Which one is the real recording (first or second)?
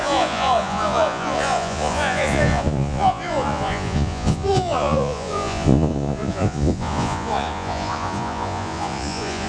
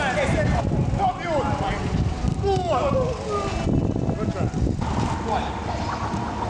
second